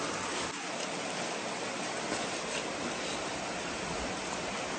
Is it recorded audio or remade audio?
recorded